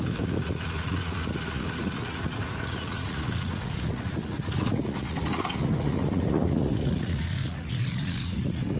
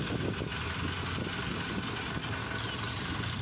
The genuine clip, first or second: second